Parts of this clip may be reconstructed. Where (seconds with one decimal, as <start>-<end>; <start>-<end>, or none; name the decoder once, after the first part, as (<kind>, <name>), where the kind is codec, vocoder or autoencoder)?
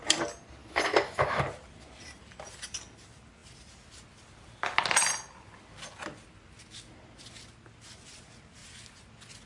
0.6-1.4 (autoencoder, DAC-VAE)